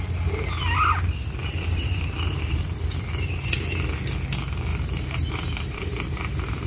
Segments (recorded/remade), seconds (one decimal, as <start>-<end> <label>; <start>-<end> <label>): 0.0-1.4 recorded; 1.4-2.6 remade; 2.6-4.7 recorded; 4.7-6.7 remade